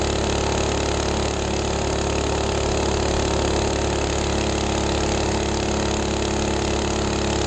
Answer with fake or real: real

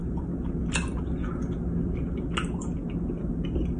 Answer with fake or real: real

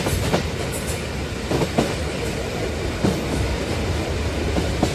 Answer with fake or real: real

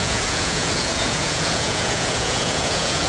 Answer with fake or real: fake